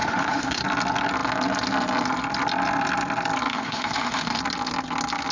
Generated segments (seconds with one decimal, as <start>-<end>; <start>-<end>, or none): 0.0-0.6; 3.5-4.4